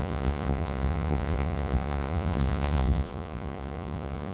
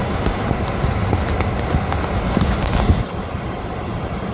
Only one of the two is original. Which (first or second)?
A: second